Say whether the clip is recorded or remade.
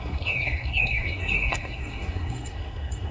remade